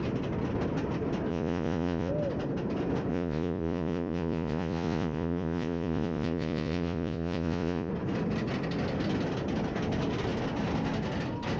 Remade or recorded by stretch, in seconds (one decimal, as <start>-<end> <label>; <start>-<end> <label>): 0.0-1.3 recorded; 1.3-2.1 remade; 2.1-3.1 recorded; 3.1-7.9 remade; 7.9-11.6 recorded